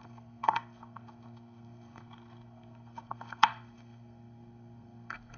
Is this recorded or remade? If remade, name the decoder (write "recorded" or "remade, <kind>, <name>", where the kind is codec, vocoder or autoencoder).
remade, codec, SNAC